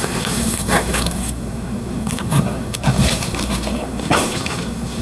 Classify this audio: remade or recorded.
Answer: remade